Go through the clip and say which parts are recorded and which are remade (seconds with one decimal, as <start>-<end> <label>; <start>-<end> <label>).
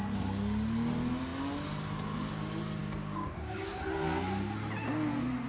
0.0-2.8 recorded; 2.8-3.8 remade; 3.8-5.5 recorded